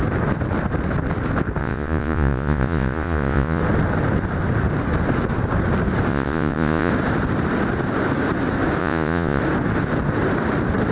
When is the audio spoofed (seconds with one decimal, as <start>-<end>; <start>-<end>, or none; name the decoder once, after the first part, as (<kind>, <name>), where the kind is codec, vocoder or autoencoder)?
1.6-3.6 (vocoder, Vocos); 6.1-6.9; 8.8-9.4